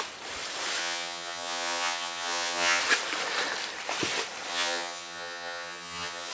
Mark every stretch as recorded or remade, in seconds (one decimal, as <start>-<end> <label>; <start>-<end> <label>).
0.0-0.8 recorded; 0.8-2.8 remade; 2.8-4.5 recorded; 4.5-6.3 remade